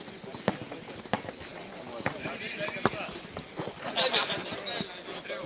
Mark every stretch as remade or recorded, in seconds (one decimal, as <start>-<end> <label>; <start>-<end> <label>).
0.0-5.5 recorded